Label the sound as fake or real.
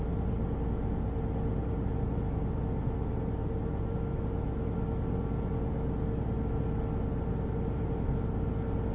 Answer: real